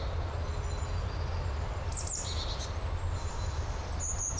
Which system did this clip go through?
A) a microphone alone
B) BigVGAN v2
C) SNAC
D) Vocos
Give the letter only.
A